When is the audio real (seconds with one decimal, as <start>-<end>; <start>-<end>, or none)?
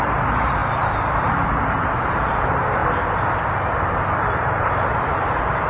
2.8-4.2